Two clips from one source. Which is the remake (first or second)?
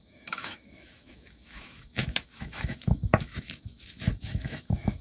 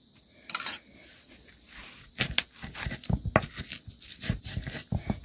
first